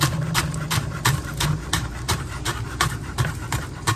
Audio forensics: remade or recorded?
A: remade